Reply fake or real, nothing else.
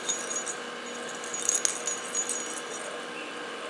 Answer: real